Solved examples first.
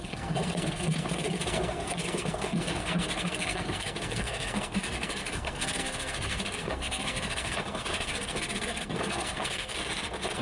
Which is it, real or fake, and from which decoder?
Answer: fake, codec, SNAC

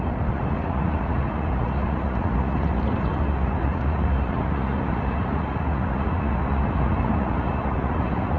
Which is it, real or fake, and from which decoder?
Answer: fake, vocoder, Vocos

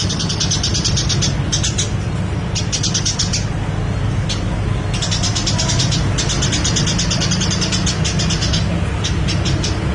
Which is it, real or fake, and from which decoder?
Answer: real